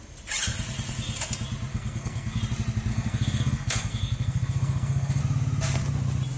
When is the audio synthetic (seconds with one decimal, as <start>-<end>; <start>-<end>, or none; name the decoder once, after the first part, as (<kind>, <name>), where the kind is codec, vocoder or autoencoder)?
1.7-2.4 (codec, SNAC); 2.9-5.2